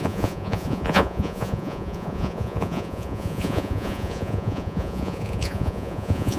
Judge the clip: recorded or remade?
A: remade